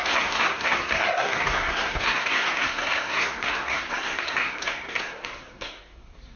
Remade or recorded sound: remade